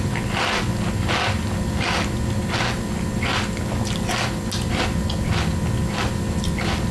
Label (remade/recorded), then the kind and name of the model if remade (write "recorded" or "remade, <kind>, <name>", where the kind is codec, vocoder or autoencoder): recorded